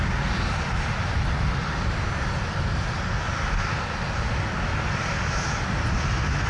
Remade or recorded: recorded